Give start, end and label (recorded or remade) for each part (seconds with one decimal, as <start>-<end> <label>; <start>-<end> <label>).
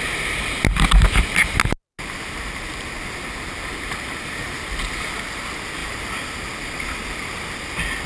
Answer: 0.0-5.8 recorded; 5.8-6.5 remade; 6.5-8.1 recorded